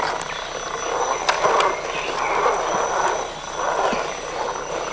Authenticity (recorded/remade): recorded